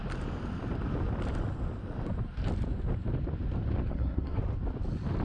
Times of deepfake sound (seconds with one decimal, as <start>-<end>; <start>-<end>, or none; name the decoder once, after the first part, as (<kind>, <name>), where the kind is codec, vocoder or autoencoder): 3.9-4.4 (codec, SNAC)